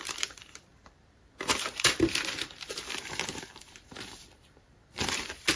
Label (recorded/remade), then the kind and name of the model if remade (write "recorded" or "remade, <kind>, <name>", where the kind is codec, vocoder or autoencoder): remade, vocoder, BigVGAN v2